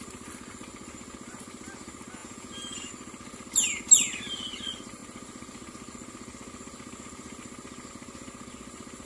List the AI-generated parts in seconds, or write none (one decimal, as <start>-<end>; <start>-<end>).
2.2-2.9